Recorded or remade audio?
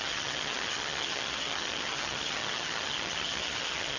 remade